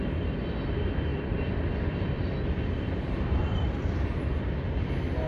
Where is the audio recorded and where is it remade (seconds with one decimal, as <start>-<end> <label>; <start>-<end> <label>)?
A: 0.0-1.1 recorded; 1.1-4.3 remade; 4.3-5.3 recorded